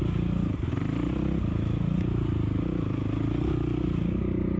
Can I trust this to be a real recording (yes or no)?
yes